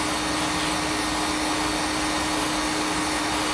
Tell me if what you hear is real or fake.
real